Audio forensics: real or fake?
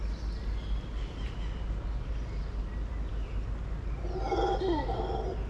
real